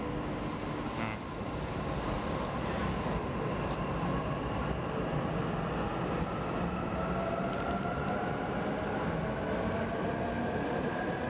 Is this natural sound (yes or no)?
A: yes